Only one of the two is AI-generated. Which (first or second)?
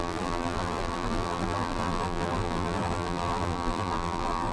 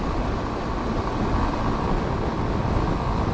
first